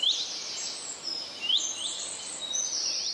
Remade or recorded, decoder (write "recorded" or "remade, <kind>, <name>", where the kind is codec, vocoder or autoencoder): recorded